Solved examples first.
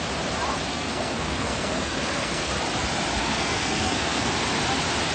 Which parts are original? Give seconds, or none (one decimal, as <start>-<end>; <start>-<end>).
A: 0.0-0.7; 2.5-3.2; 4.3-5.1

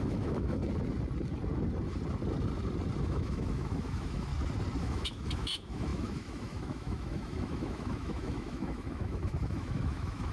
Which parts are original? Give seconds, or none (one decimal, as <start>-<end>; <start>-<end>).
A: 0.6-3.0; 4.3-4.8

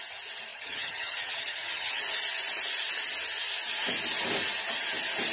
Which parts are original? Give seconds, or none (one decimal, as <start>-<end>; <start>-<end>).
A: 0.0-0.5; 2.0-5.3

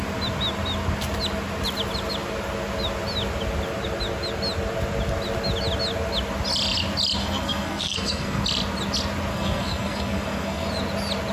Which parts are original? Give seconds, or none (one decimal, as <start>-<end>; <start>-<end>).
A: 0.0-7.2; 8.4-9.3; 10.7-11.3

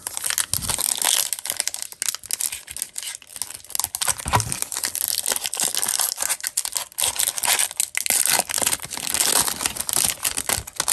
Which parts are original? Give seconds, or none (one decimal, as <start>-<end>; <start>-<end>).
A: 0.0-10.9

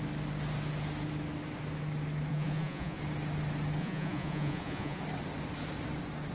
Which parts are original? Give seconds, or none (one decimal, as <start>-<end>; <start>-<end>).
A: 0.0-2.3; 3.0-3.8; 5.0-6.3

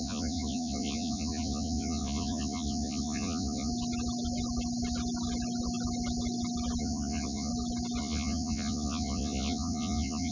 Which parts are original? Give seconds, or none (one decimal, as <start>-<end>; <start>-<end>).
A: 3.7-6.8; 7.5-8.0